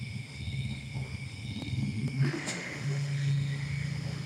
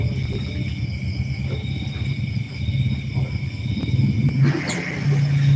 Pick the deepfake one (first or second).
first